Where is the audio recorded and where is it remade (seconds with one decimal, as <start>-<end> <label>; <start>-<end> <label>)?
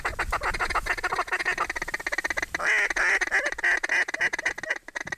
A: 0.0-5.2 recorded